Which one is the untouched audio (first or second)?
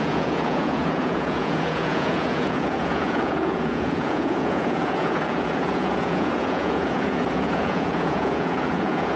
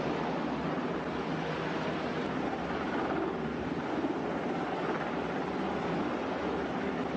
second